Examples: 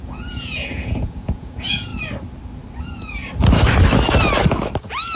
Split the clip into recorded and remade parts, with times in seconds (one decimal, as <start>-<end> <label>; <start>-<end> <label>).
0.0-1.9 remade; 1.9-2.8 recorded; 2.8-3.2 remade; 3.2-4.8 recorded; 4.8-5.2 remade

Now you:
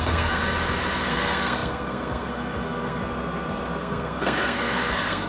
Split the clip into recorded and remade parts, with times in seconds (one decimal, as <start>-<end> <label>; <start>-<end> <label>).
0.0-0.4 remade; 0.4-1.0 recorded; 1.0-3.0 remade; 3.0-3.8 recorded; 3.8-5.3 remade

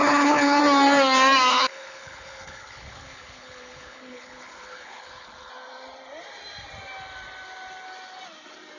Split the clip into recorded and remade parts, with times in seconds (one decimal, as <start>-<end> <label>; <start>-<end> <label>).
0.0-0.6 remade; 0.6-1.5 recorded; 1.5-5.5 remade; 5.5-8.8 recorded

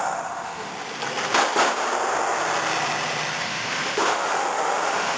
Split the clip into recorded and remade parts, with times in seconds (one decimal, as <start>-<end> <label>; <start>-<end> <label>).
0.0-0.7 remade; 0.7-3.4 recorded; 3.4-5.2 remade

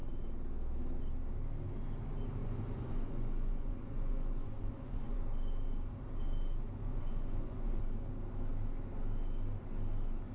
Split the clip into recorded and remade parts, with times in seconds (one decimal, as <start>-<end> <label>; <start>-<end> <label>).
0.0-2.4 recorded; 2.4-5.2 remade; 5.2-6.8 recorded; 6.8-7.8 remade; 7.8-10.3 recorded

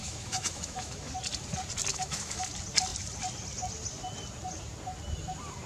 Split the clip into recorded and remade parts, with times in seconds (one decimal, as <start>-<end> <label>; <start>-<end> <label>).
0.0-1.1 remade; 1.1-1.9 recorded; 1.9-2.5 remade; 2.5-5.7 recorded